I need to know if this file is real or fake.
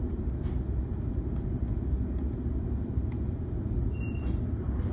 real